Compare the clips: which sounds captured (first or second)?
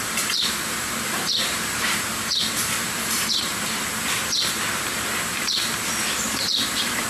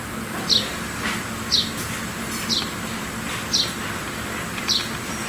second